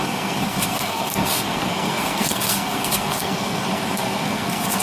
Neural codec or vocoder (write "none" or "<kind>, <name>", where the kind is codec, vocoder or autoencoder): codec, SNAC